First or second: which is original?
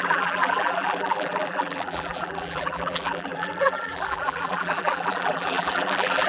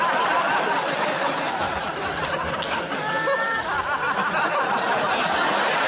second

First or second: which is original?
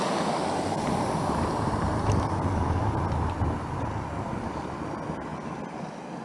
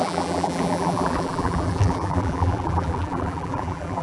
first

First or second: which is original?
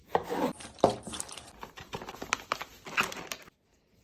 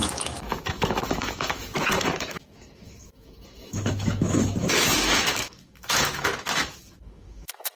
first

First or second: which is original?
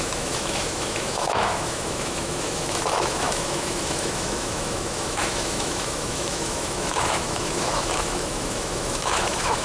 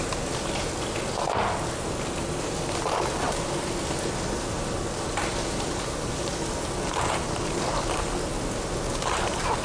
second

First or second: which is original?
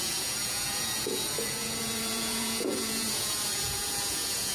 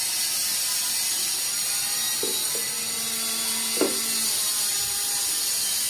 second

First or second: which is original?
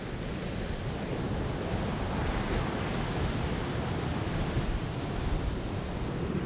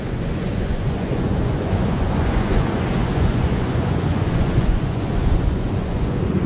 first